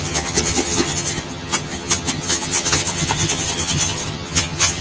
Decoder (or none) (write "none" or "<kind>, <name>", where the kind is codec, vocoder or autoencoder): vocoder, HiFi-GAN